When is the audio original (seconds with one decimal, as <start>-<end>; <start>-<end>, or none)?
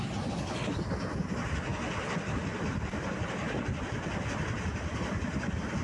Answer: 0.0-5.8